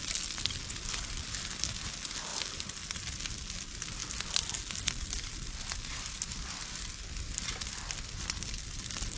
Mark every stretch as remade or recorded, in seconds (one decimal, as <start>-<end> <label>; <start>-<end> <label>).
0.0-2.3 recorded; 2.3-3.2 remade; 3.2-9.2 recorded